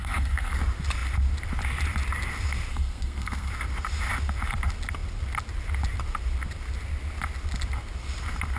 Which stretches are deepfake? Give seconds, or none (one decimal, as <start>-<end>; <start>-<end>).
0.0-0.6; 2.7-3.5